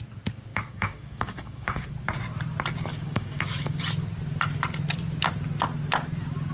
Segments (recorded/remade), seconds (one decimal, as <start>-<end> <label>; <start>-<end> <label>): 0.0-0.5 recorded; 0.5-1.9 remade; 1.9-2.9 recorded; 2.9-3.8 remade; 3.8-6.5 recorded